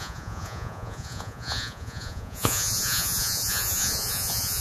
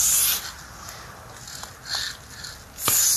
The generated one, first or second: first